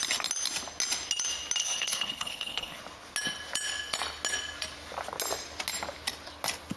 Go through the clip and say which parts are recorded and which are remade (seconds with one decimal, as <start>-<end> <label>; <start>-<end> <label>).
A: 0.0-1.6 recorded; 1.6-2.8 remade; 2.8-6.8 recorded